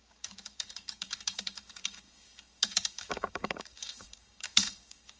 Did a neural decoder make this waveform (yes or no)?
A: yes